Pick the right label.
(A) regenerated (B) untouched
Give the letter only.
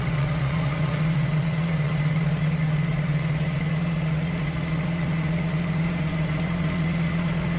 A